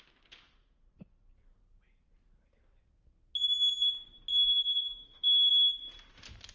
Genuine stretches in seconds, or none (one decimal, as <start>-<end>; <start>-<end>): 0.0-4.3; 5.5-6.5